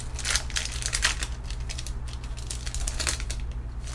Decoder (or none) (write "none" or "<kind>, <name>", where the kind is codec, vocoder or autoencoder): none